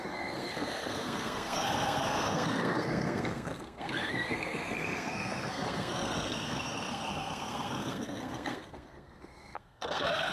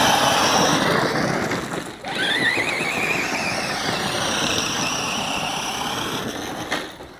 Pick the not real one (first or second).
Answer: first